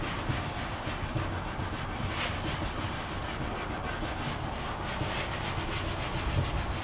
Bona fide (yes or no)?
yes